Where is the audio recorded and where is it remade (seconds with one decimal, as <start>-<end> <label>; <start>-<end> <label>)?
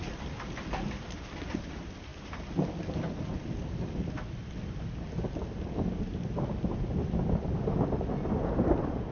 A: 0.0-9.1 recorded